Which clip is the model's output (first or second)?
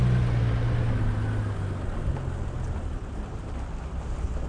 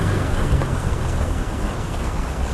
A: second